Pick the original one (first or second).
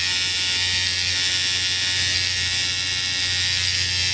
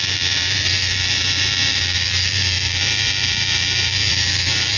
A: first